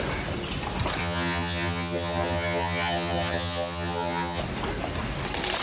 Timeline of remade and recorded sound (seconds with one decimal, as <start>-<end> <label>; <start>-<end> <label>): 0.0-1.0 recorded; 1.0-4.4 remade; 4.4-5.6 recorded